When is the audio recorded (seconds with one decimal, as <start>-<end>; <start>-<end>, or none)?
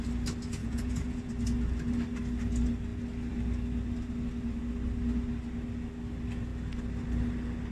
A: 0.0-0.6; 1.3-7.7